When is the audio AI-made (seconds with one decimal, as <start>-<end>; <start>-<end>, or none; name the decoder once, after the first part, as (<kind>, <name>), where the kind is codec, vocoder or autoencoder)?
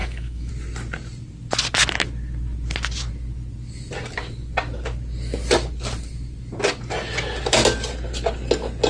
0.0-0.5 (autoencoder, DAC-VAE)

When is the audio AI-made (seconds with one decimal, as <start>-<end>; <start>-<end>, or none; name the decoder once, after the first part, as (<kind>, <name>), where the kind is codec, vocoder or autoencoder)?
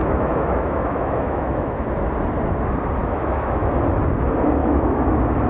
0.0-1.8 (autoencoder, DAC-VAE); 3.0-3.7; 4.6-5.1